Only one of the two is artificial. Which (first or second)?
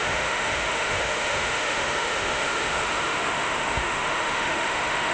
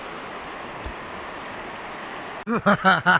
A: first